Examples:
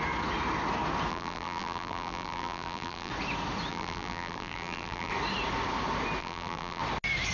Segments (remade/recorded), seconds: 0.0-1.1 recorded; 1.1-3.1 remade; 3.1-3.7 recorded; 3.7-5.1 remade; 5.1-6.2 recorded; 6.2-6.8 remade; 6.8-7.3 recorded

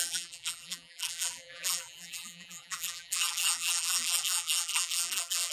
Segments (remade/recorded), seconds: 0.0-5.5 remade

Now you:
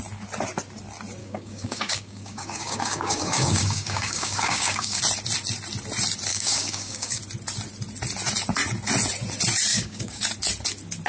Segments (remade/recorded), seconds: 0.0-1.2 recorded; 1.2-5.0 remade; 5.0-6.3 recorded; 6.3-7.2 remade; 7.2-9.7 recorded; 9.7-10.2 remade; 10.2-11.1 recorded

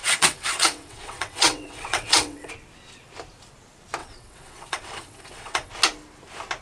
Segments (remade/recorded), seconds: 0.0-2.5 remade; 2.5-4.0 recorded; 4.0-5.7 remade; 5.7-6.6 recorded

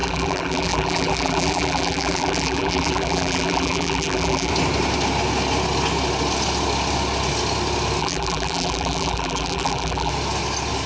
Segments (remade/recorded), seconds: 0.0-4.5 remade; 4.5-8.0 recorded; 8.0-10.1 remade; 10.1-10.9 recorded

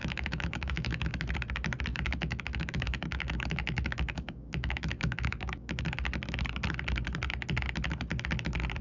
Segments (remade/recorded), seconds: 0.0-1.1 remade; 1.1-1.9 recorded; 1.9-5.8 remade; 5.8-8.8 recorded

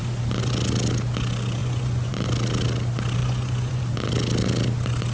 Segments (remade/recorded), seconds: 0.0-1.6 recorded; 1.6-2.1 remade; 2.1-3.2 recorded; 3.2-3.8 remade; 3.8-5.1 recorded